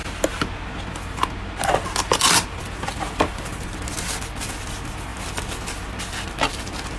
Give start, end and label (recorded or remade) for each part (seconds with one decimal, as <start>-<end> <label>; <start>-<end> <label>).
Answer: 0.0-7.0 recorded